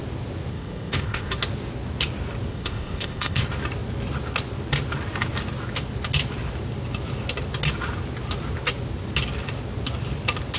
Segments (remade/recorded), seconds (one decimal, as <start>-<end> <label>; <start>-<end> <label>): 0.0-0.5 recorded; 0.5-1.3 remade; 1.3-2.5 recorded; 2.5-3.4 remade; 3.4-10.6 recorded